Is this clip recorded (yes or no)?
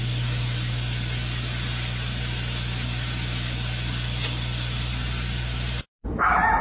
yes